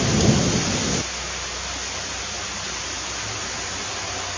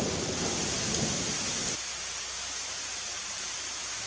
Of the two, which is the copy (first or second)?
second